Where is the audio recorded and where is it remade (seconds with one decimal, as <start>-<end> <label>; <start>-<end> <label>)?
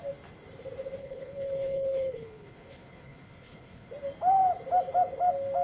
0.0-1.0 recorded; 1.0-3.9 remade; 3.9-5.6 recorded